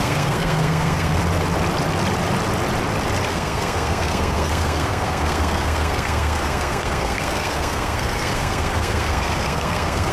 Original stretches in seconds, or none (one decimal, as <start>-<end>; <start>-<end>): 1.2-3.3